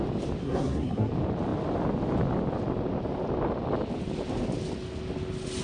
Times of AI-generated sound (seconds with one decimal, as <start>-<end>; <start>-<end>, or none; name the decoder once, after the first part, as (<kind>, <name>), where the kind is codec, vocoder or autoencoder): 0.4-1.1 (codec, SNAC)